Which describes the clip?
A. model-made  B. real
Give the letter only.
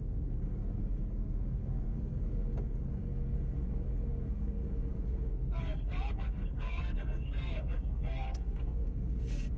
A